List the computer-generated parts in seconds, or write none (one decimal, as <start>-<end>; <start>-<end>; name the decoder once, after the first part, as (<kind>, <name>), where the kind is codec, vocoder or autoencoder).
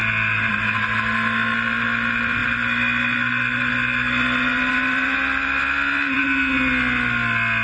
none